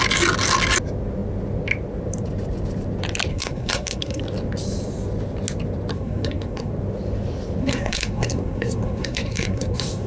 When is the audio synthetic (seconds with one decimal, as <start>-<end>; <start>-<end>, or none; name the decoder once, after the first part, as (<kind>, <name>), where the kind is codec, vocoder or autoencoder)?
3.3-4.2 (codec, SNAC); 5.9-6.7; 7.6-10.1